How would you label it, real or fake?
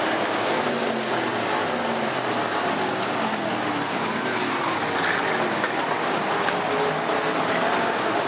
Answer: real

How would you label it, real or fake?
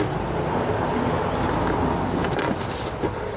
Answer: real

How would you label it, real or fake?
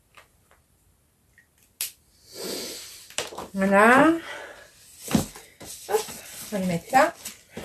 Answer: real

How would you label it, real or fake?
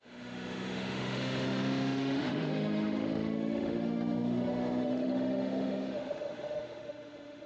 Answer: fake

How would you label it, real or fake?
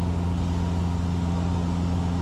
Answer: real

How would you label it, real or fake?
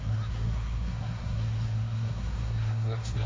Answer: fake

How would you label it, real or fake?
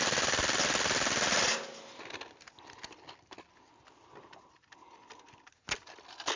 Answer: real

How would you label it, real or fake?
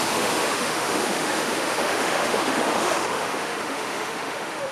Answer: fake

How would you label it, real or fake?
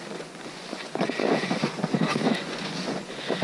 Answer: fake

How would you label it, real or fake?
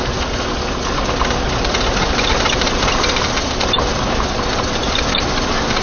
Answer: real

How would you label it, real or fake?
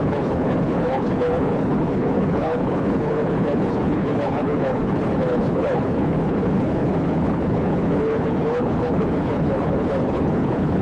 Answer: fake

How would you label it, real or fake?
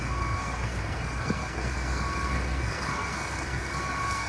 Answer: fake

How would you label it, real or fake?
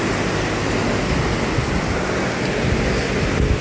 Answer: real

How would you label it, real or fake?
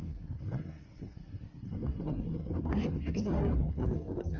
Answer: fake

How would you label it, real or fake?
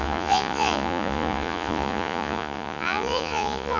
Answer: fake